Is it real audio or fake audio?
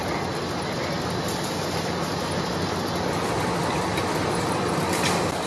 real